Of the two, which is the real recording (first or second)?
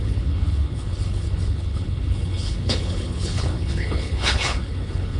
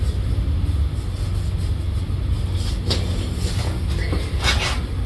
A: second